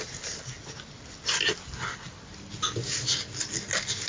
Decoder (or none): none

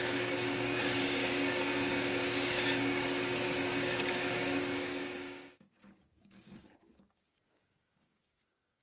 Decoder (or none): codec, DAC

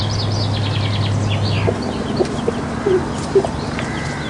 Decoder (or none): none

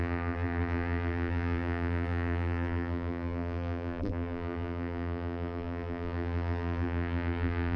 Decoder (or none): vocoder, BigVGAN v2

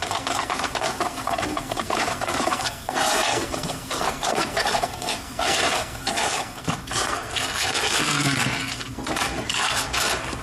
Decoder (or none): codec, SNAC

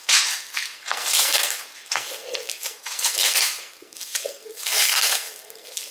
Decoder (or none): codec, SNAC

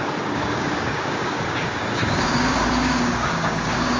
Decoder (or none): codec, DAC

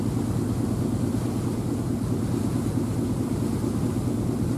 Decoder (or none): none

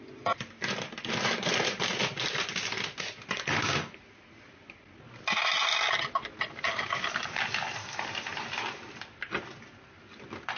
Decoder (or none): none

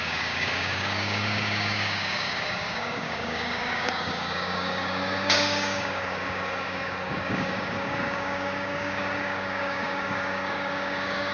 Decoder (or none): codec, DAC